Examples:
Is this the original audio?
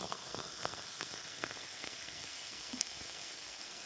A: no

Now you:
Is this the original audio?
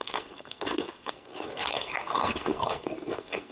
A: no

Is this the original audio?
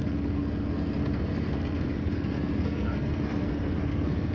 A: no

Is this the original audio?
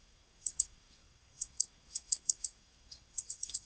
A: no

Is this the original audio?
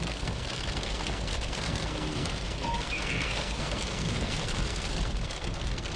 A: no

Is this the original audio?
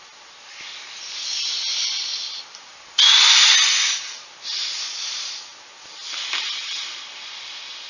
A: yes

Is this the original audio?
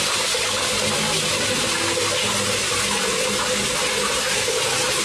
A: yes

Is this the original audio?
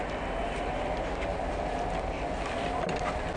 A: yes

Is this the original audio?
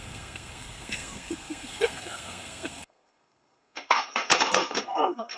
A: no